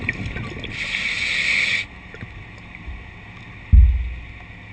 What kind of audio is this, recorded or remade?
recorded